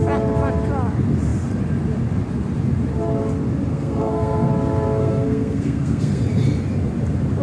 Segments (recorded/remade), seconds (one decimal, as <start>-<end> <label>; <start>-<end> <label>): 0.0-3.7 recorded; 3.7-4.5 remade; 4.5-5.0 recorded; 5.0-6.2 remade; 6.2-7.4 recorded